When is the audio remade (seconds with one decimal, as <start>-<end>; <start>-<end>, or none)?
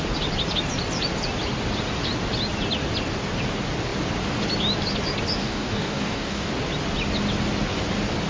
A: 5.4-6.5